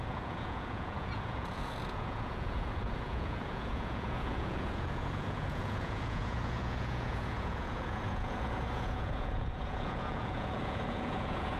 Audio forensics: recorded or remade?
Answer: remade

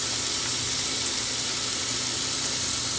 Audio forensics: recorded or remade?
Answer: recorded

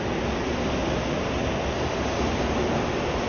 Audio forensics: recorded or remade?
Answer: recorded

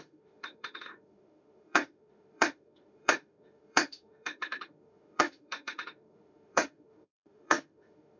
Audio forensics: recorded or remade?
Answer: remade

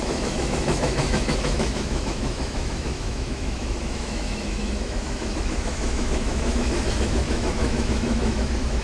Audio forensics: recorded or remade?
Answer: remade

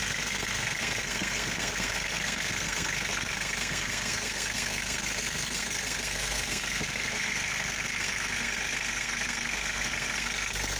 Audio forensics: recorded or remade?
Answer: remade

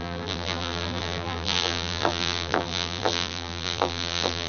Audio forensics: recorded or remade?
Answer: remade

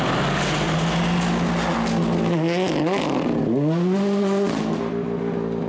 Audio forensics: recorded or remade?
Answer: recorded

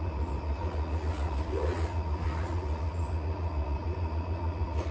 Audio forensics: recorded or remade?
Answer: remade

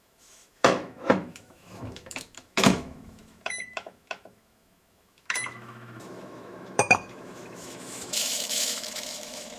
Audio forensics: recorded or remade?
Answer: remade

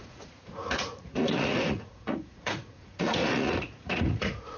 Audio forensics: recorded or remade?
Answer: remade